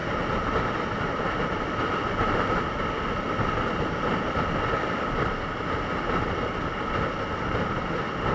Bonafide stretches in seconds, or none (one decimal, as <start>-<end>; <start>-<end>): 0.0-8.3